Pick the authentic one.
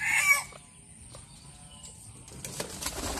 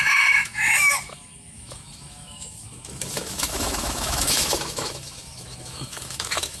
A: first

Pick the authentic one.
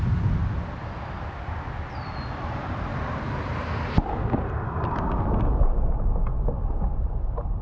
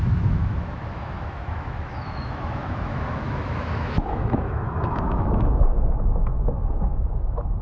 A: first